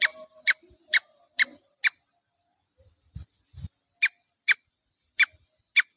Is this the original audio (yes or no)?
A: yes